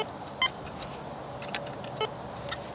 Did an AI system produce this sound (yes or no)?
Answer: no